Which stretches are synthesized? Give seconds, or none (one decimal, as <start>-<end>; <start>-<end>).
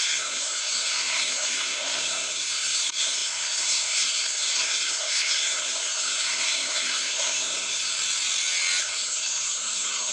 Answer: 0.0-7.9; 8.8-10.1